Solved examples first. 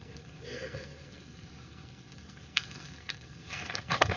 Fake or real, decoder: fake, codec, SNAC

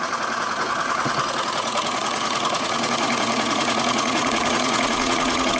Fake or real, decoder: fake, vocoder, Vocos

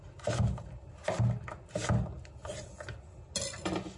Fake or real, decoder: real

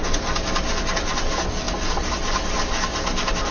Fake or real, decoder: real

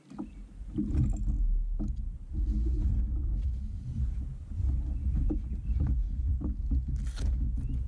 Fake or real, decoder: real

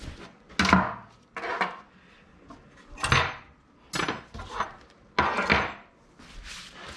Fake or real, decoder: real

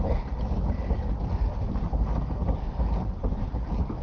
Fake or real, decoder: real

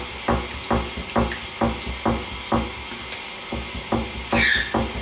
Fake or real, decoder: real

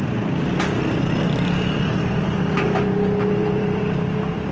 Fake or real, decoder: real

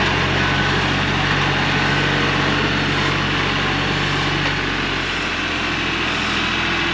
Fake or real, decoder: real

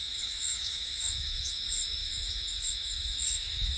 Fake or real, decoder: fake, autoencoder, DAC-VAE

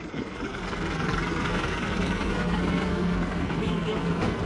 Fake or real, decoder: fake, codec, SNAC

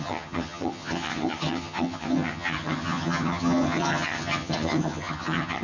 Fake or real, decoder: fake, vocoder, HiFi-GAN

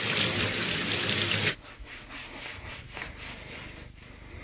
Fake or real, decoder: real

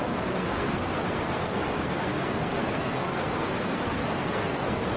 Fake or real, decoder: fake, codec, SNAC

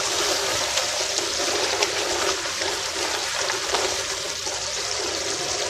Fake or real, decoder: real